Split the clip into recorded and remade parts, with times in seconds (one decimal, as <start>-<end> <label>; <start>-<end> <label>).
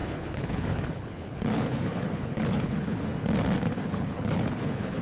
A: 0.0-3.0 remade; 3.0-3.8 recorded; 3.8-5.0 remade